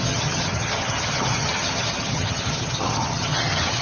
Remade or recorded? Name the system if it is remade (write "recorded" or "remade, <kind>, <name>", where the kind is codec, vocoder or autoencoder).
remade, vocoder, HiFi-GAN